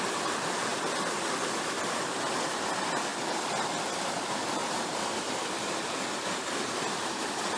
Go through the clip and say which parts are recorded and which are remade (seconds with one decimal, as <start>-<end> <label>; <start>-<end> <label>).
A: 0.0-7.6 recorded